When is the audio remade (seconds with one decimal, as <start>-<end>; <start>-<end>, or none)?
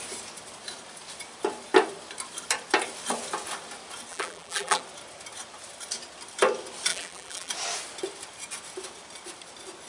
4.1-4.8; 6.9-7.5